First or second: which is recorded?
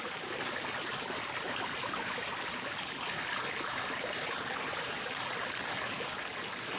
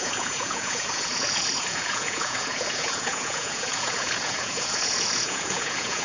first